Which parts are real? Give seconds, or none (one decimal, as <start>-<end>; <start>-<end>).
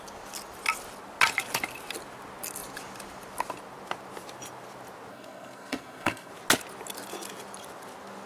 0.0-5.1; 6.3-8.3